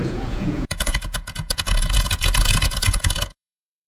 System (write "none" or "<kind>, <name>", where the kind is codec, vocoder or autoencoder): vocoder, Vocos